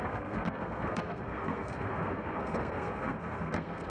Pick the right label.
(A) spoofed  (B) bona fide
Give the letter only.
A